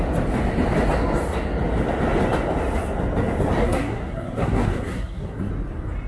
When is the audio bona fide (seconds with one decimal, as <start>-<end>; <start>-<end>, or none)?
0.0-3.6; 5.5-6.1